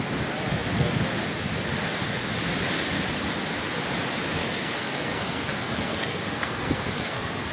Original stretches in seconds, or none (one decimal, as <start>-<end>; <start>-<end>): 0.0-4.4